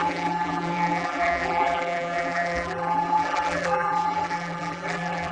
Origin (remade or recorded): remade